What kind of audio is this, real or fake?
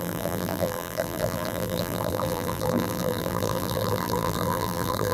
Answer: fake